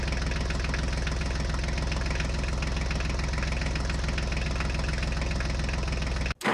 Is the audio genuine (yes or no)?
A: yes